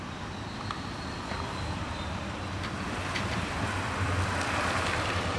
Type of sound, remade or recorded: remade